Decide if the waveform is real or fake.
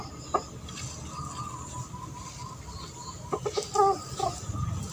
real